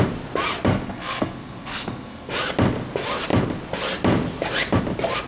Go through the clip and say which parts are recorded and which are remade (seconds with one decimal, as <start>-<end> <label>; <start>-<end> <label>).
0.0-0.7 recorded; 0.7-2.3 remade; 2.3-5.3 recorded